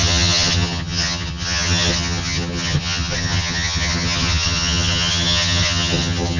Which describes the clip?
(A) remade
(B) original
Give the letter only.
A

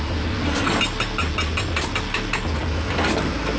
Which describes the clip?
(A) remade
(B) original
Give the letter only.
B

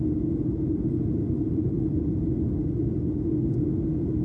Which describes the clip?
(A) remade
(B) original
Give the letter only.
B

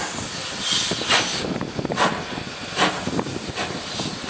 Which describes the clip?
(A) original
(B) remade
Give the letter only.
A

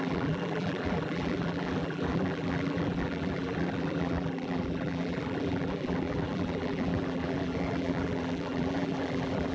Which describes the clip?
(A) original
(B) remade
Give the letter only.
B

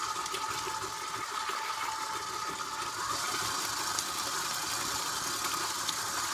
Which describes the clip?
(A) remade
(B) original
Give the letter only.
B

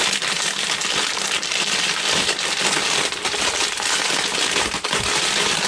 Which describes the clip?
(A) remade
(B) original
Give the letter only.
B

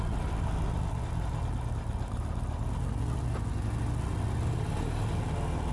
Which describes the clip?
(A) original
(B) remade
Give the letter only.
A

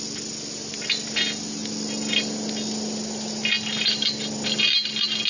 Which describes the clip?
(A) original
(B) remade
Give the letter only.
A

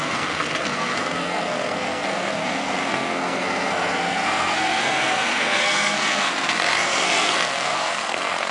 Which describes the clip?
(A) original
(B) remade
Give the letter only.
B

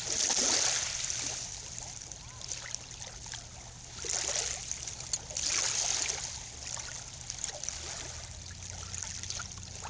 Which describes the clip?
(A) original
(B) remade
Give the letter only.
A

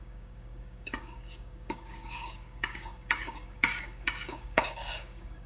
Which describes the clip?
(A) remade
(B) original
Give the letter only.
A